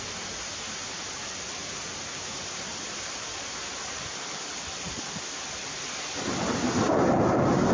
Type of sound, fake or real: real